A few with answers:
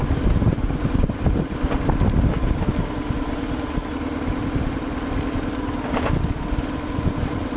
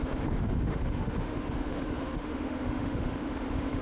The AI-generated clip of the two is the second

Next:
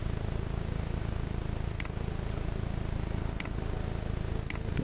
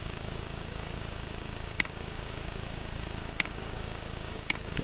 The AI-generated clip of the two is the second